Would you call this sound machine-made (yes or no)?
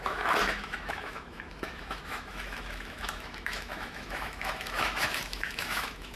yes